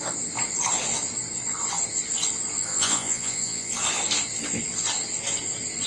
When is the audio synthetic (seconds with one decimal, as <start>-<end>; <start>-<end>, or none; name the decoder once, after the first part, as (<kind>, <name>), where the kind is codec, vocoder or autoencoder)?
2.7-3.7 (vocoder, Vocos)